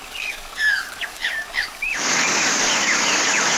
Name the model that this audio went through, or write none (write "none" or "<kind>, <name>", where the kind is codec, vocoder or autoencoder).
codec, DAC